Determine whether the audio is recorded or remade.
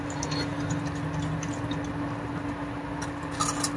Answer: recorded